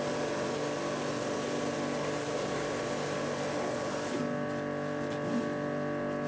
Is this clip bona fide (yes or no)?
yes